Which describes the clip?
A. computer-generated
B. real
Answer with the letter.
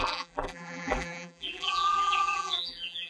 A